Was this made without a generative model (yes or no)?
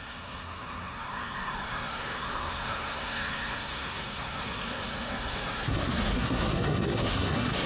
no